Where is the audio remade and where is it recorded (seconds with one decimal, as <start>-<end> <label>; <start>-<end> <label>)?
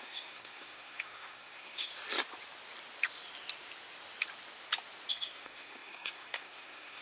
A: 0.0-1.9 remade; 1.9-5.1 recorded; 5.1-7.0 remade